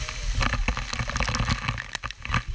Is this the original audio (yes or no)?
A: yes